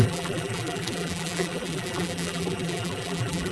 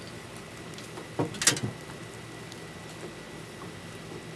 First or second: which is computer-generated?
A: first